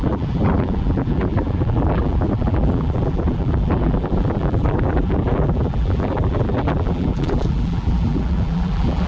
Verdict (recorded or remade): remade